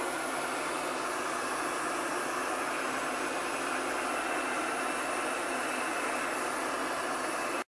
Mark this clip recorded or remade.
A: recorded